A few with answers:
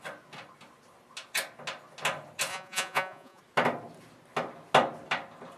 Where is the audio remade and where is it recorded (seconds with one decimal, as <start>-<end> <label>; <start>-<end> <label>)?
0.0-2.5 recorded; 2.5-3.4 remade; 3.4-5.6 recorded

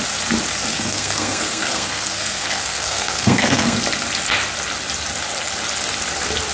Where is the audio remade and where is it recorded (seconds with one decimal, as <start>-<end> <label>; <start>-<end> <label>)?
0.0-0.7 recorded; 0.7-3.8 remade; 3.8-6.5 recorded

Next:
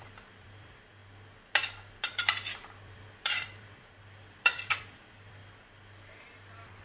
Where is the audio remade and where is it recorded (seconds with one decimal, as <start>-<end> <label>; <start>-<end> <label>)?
0.0-1.0 remade; 1.0-2.1 recorded; 2.1-5.4 remade; 5.4-6.8 recorded